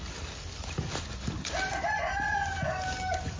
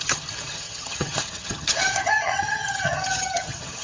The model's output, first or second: second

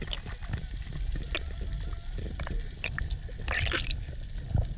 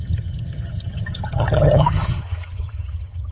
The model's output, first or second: second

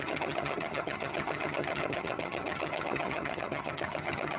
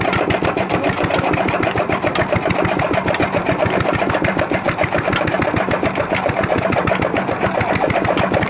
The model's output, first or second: first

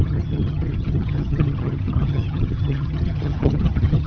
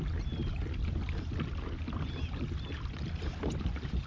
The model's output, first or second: first